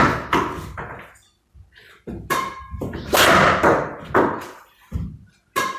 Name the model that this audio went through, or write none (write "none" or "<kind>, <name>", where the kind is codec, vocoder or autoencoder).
none